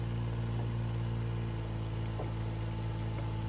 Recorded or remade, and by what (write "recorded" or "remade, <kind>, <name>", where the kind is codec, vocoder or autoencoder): recorded